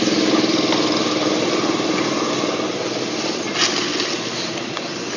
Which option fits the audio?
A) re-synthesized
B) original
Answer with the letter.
B